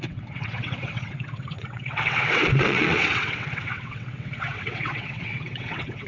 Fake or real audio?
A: fake